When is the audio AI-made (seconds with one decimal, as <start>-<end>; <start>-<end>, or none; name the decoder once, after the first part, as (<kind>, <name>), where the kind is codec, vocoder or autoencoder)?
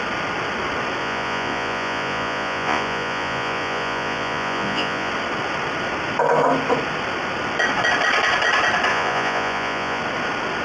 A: 1.0-5.1 (vocoder, Vocos); 8.9-10.0